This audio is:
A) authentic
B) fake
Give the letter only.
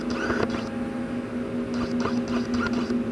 A